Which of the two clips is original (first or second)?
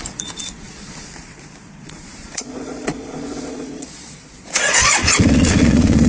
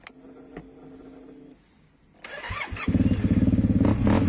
second